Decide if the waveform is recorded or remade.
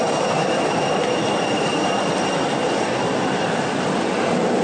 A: remade